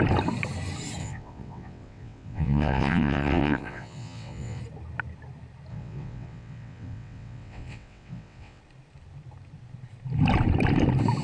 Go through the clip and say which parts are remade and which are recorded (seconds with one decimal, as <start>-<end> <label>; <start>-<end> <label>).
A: 0.0-1.0 recorded; 1.0-4.6 remade; 4.6-5.7 recorded; 5.7-8.6 remade; 8.6-11.2 recorded